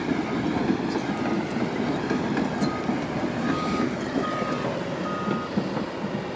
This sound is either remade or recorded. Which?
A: recorded